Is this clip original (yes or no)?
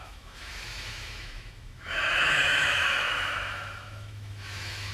no